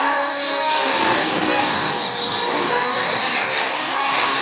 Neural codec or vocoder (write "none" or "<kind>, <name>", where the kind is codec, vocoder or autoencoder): codec, DAC